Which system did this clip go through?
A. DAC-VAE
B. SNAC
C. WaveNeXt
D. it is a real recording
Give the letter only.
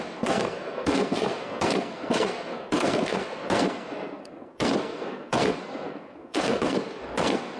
B